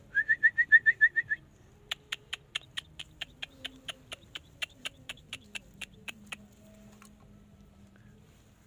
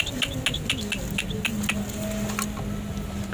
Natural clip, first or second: second